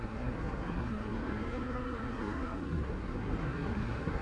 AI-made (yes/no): yes